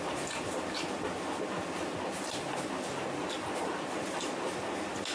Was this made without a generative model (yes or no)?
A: yes